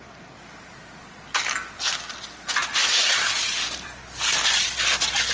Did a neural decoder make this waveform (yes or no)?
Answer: no